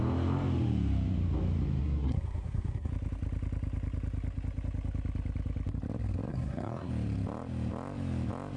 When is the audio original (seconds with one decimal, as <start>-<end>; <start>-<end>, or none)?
0.0-1.8; 2.9-6.3; 6.9-8.6